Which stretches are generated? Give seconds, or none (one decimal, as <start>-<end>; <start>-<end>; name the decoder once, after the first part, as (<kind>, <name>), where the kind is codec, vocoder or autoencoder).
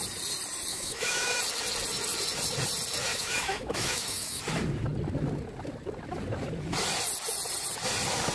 0.7-1.4 (autoencoder, DAC-VAE); 3.1-4.4